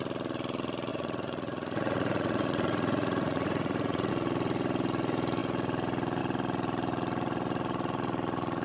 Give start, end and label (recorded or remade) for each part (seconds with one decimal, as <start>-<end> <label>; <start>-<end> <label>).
0.0-0.9 recorded; 0.9-4.1 remade; 4.1-8.6 recorded